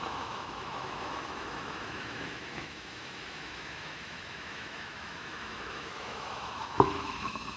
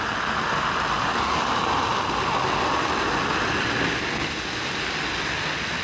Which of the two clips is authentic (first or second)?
second